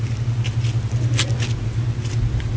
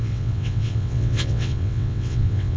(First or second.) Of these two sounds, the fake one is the second